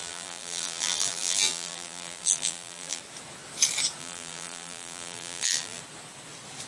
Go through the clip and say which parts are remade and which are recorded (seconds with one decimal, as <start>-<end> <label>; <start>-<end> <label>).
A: 0.0-3.0 remade; 3.0-4.0 recorded; 4.0-5.8 remade; 5.8-6.7 recorded